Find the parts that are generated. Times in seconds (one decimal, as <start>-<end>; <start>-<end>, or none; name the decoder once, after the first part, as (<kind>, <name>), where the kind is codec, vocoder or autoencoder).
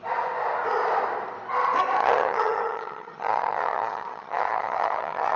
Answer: 2.0-5.4 (vocoder, HiFi-GAN)